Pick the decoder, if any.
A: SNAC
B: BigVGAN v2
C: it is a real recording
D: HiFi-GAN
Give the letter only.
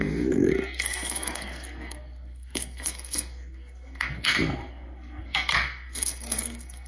A